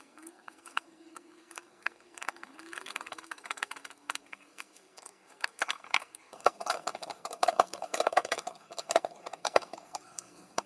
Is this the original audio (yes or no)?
no